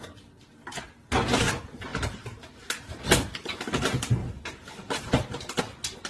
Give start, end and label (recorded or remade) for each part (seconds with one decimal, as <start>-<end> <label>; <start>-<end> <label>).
0.0-1.9 recorded; 1.9-3.0 remade; 3.0-4.2 recorded; 4.2-5.6 remade; 5.6-6.1 recorded